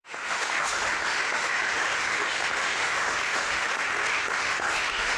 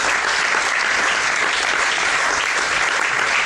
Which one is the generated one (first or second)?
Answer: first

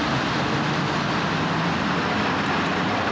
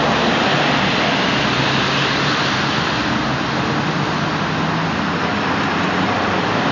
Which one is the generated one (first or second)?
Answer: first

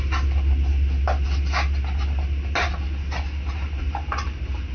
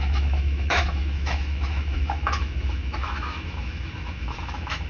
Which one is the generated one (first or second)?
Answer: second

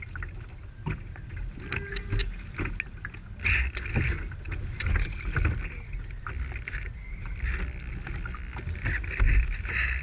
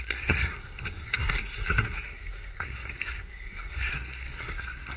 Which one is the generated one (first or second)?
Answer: second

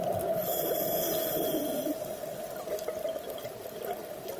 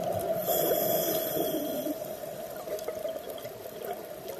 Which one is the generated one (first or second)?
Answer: second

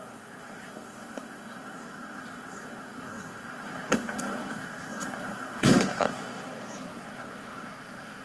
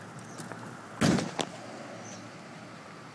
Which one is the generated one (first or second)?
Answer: first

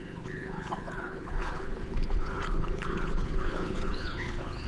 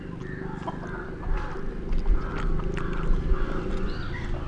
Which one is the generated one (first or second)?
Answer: first